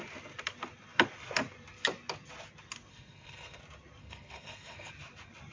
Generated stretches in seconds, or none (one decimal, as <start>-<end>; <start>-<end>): 2.9-3.6; 4.0-4.9